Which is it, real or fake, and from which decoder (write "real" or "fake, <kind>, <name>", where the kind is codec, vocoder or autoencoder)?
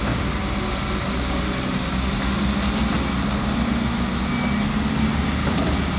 real